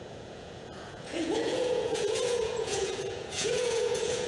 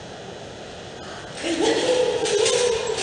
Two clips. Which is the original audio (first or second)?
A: second